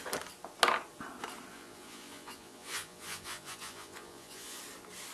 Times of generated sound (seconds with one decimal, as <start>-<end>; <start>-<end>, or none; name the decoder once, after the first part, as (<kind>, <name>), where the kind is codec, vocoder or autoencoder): 1.5-4.6 (vocoder, Vocos)